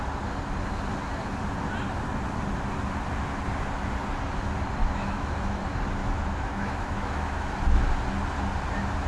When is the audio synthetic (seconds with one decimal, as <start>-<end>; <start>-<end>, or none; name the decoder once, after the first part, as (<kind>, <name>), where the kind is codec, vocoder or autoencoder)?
4.8-5.6 (autoencoder, DAC-VAE); 6.0-7.5